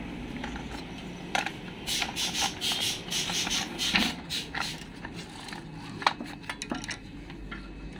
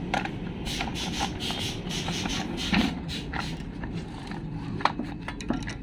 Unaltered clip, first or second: first